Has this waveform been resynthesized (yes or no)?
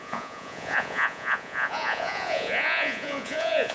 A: yes